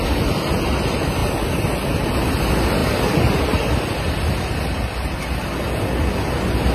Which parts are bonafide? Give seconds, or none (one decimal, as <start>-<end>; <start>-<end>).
0.0-6.7